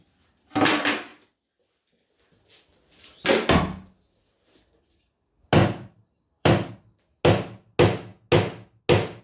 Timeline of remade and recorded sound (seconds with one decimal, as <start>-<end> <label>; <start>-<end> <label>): 0.0-5.6 recorded; 5.6-6.7 remade; 6.7-9.2 recorded